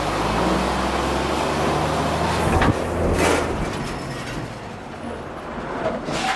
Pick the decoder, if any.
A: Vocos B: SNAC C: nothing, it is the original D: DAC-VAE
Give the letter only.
C